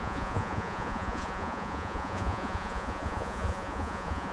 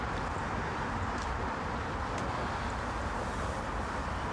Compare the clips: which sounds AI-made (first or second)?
first